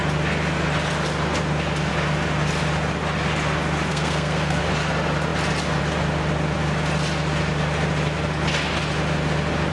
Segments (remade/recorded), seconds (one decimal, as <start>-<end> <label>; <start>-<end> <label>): 0.0-3.9 recorded; 3.9-4.6 remade; 4.6-9.7 recorded